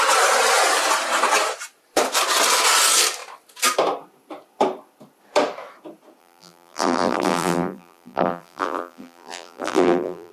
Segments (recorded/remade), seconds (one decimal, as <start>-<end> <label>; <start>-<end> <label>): 0.0-6.2 recorded; 6.2-10.3 remade